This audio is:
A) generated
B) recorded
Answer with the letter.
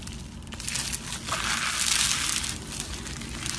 B